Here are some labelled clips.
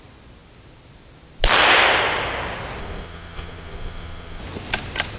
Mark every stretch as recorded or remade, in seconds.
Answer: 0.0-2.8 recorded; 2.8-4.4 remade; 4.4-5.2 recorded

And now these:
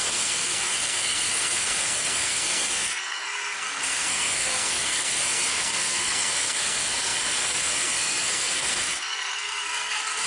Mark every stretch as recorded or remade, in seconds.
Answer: 0.0-10.3 remade

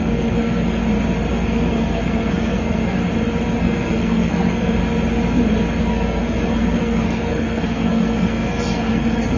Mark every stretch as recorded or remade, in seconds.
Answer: 0.0-0.8 remade; 0.8-1.3 recorded; 1.3-3.0 remade; 3.0-3.6 recorded; 3.6-4.8 remade; 4.8-5.8 recorded; 5.8-9.4 remade